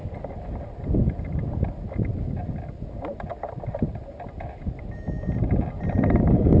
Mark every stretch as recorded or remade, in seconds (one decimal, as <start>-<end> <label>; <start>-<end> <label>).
0.0-6.6 recorded